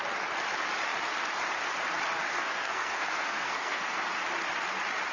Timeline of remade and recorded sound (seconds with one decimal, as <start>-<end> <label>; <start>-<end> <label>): 0.0-2.3 recorded; 2.3-4.0 remade; 4.0-5.1 recorded